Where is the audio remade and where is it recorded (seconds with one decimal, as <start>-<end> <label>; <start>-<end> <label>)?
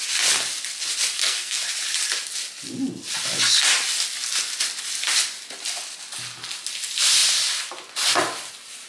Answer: 0.0-1.1 recorded; 1.1-1.6 remade; 1.6-8.9 recorded